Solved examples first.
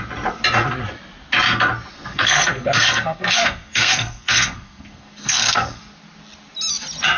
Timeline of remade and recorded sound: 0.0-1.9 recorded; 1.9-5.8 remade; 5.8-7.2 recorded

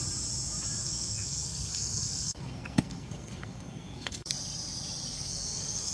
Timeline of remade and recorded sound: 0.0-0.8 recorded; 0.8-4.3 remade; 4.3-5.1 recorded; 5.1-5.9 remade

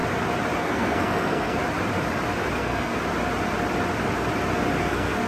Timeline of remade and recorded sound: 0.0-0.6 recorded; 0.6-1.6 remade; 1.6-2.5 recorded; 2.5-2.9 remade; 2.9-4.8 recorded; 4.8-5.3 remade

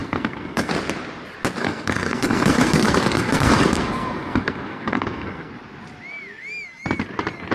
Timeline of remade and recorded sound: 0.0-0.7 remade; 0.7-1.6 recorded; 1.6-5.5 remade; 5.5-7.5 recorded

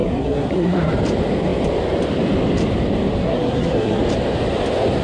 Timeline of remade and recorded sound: 0.0-0.9 remade; 0.9-3.2 recorded; 3.2-4.0 remade; 4.0-5.0 recorded

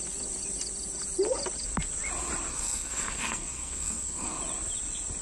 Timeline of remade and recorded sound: 0.0-2.5 recorded; 2.5-4.4 remade; 4.4-5.2 recorded

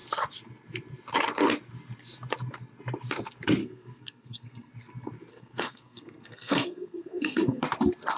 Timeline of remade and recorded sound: 0.0-3.6 recorded; 3.6-4.7 remade; 4.7-5.3 recorded; 5.3-7.6 remade; 7.6-8.2 recorded

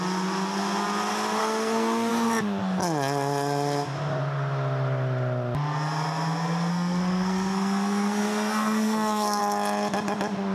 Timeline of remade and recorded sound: 0.0-1.4 recorded; 1.4-2.1 remade; 2.1-6.7 recorded; 6.7-9.4 remade; 9.4-10.5 recorded